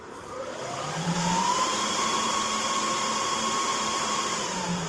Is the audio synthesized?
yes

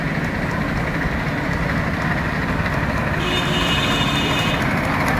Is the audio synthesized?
no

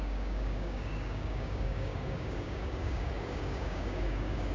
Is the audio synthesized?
yes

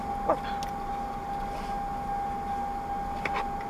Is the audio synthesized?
no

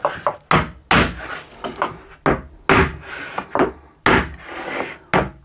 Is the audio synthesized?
no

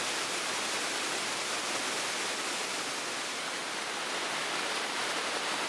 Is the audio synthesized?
no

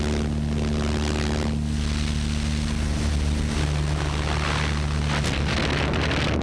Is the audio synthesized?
no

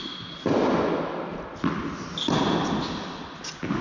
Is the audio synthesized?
no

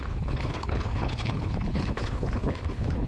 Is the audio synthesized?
yes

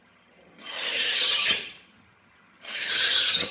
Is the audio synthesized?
yes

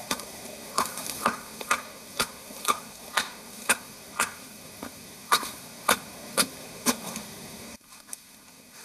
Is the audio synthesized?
yes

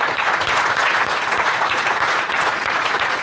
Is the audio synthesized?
yes